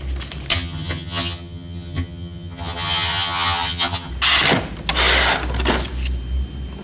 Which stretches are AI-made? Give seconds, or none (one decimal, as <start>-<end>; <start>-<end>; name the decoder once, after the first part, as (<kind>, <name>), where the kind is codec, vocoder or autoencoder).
0.5-4.1 (vocoder, HiFi-GAN)